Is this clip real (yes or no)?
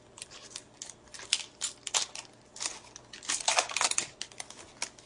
yes